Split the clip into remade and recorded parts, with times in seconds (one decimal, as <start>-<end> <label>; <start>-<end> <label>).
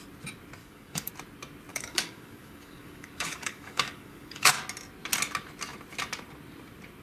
0.0-0.6 recorded; 0.6-1.1 remade; 1.1-1.7 recorded; 1.7-4.6 remade; 4.6-7.0 recorded